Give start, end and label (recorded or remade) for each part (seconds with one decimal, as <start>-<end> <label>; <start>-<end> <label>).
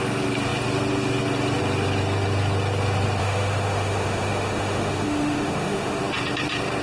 0.0-3.2 recorded; 3.2-6.0 remade; 6.0-6.8 recorded